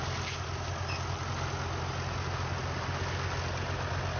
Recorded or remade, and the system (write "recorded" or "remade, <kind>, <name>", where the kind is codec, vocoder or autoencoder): recorded